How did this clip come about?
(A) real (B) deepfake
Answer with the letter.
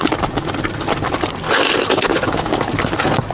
A